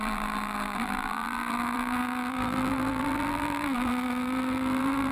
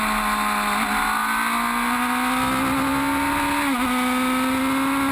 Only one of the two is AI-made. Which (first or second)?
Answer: first